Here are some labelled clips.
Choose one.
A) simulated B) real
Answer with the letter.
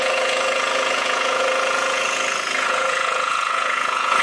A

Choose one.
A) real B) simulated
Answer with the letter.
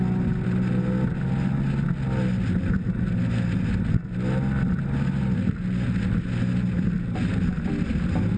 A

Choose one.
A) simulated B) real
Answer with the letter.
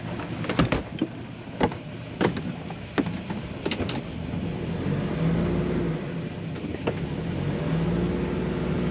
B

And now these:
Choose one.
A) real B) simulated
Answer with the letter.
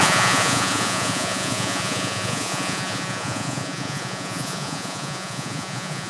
B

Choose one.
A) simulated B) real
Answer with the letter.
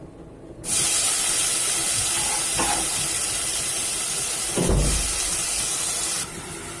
B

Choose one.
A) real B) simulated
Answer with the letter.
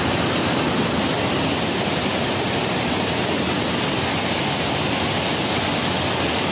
A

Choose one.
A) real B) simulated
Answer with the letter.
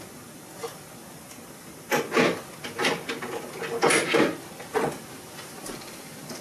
A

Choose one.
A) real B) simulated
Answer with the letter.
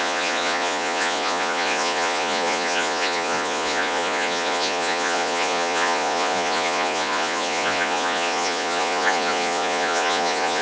B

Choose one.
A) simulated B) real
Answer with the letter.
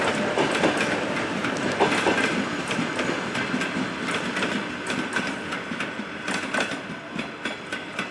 B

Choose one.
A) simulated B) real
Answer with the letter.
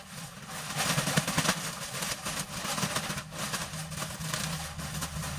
B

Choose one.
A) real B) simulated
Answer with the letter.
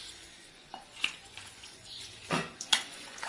B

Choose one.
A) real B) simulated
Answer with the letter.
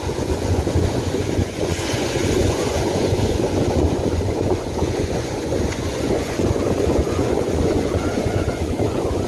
B